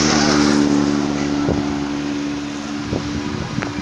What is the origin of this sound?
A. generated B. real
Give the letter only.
B